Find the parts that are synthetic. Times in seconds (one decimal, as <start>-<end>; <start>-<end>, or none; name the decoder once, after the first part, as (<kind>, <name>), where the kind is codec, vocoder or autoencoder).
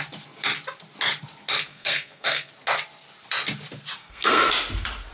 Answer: 1.7-2.5 (codec, SNAC); 4.0-4.5